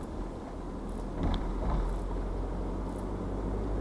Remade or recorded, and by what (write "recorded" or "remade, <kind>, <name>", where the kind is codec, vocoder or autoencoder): recorded